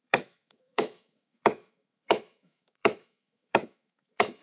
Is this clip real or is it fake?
fake